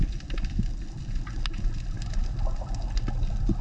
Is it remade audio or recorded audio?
recorded